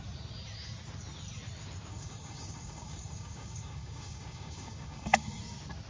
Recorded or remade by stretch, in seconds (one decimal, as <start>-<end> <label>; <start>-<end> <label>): 0.0-1.9 recorded; 1.9-5.4 remade; 5.4-5.9 recorded